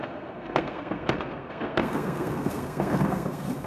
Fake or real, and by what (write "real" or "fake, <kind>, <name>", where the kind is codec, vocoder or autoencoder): fake, codec, SNAC